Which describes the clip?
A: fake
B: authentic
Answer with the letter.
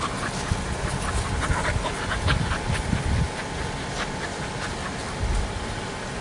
B